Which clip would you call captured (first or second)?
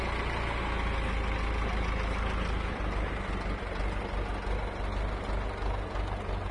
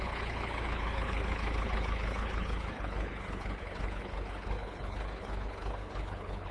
first